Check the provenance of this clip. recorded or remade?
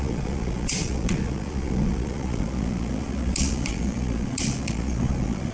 remade